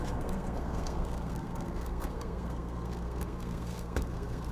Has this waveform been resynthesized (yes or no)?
yes